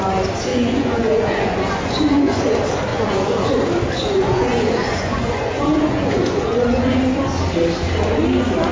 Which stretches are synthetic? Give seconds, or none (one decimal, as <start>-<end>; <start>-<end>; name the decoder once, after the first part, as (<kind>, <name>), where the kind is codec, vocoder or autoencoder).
0.5-2.4 (vocoder, Vocos); 2.9-3.5; 4.0-7.0